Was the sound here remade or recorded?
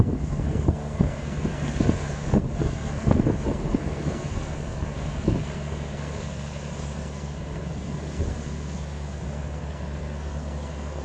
remade